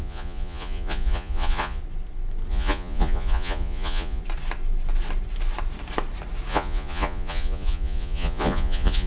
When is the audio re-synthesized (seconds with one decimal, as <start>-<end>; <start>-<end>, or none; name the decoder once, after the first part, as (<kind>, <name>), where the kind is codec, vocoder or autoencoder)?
0.0-1.8 (vocoder, Vocos); 2.5-4.2; 6.5-9.1